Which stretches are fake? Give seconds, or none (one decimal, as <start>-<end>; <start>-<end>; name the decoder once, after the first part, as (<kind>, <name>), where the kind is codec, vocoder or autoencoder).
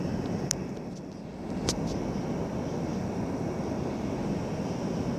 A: none